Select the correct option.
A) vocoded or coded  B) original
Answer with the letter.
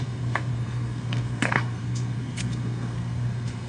A